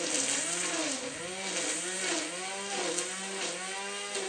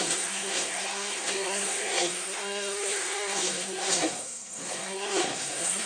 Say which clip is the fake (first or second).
second